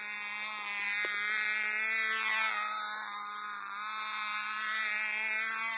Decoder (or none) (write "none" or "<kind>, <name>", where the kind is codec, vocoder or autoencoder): none